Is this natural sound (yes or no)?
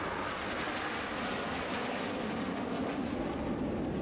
yes